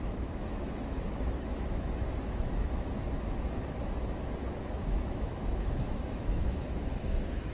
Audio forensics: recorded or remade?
remade